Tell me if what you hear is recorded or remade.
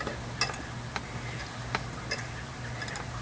recorded